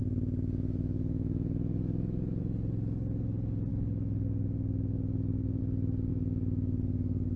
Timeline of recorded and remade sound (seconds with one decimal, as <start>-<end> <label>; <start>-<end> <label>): 0.0-2.4 remade; 2.4-3.7 recorded; 3.7-5.6 remade; 5.6-6.1 recorded; 6.1-7.4 remade